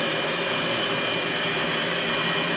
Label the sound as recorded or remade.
recorded